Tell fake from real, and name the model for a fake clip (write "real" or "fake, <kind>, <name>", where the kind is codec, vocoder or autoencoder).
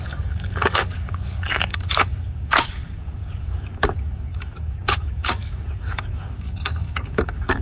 fake, codec, DAC